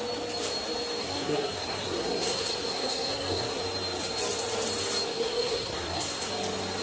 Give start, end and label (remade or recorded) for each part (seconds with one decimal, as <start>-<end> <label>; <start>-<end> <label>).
0.0-1.0 recorded; 1.0-3.6 remade; 3.6-5.1 recorded; 5.1-6.3 remade; 6.3-6.8 recorded